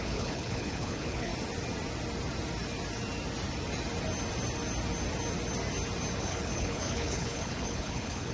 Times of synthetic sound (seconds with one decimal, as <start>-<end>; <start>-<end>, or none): 0.0-1.3; 6.2-8.3